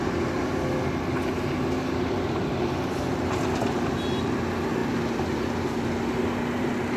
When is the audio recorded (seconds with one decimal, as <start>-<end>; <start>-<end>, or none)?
0.0-7.0